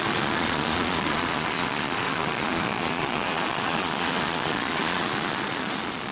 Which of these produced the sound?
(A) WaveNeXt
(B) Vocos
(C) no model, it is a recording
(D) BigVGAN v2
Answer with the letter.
B